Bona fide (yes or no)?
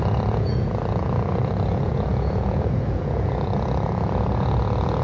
no